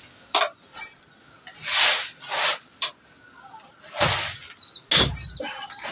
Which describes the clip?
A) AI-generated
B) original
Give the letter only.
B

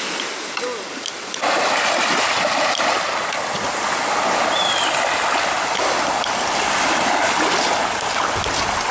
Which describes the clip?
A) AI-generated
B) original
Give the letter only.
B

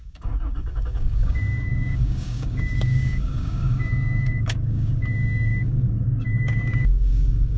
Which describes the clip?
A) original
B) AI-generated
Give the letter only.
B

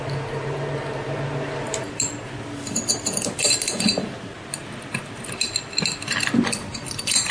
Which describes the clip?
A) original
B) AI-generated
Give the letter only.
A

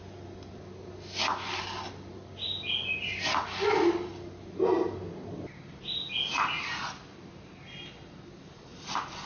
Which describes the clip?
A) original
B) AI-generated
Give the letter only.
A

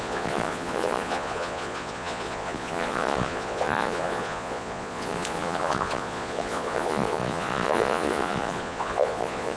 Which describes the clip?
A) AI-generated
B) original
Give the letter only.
A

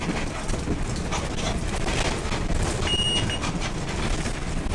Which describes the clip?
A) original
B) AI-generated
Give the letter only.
A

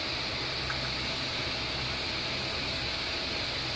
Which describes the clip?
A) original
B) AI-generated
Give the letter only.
A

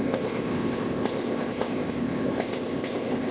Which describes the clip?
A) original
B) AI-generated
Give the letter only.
B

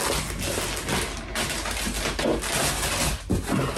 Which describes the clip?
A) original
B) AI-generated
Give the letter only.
A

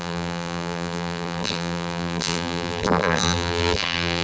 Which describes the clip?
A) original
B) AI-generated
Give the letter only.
B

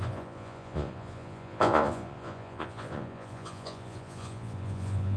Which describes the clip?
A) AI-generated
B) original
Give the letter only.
A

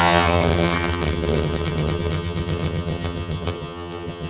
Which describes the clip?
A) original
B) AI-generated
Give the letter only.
B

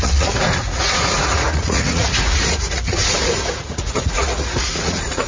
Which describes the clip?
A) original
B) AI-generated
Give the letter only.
B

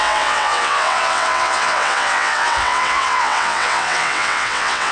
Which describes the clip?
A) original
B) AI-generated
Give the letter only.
B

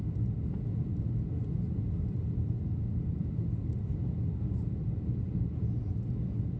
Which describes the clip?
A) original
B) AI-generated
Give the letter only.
A